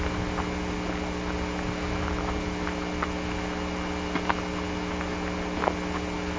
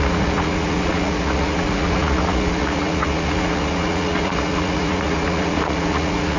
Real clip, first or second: first